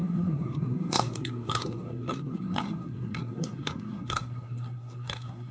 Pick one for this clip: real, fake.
fake